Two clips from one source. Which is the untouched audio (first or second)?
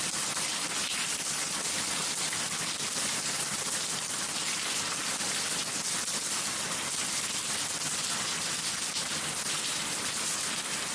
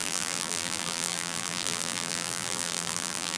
first